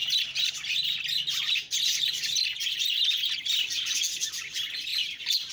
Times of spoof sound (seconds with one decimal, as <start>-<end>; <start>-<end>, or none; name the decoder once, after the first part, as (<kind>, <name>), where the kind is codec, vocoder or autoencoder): none